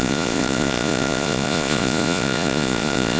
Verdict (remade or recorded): remade